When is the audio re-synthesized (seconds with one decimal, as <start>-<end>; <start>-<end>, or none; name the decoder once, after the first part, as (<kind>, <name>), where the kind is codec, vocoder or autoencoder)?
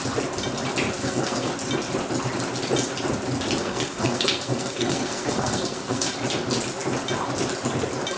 1.0-1.5 (codec, SNAC); 3.6-6.1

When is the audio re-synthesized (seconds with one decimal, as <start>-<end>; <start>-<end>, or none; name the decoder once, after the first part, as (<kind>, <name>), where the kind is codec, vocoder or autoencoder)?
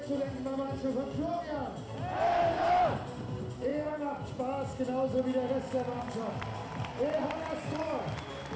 none